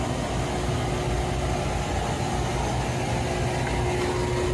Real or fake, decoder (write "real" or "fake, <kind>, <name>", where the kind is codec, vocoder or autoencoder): real